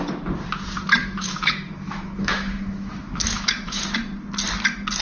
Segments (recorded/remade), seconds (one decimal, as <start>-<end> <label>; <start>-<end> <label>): 0.0-1.0 recorded; 1.0-3.8 remade; 3.8-5.0 recorded